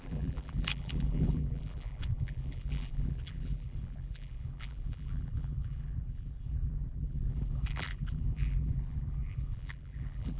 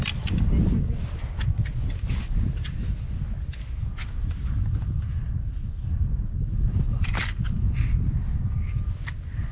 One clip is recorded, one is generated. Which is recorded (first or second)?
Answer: second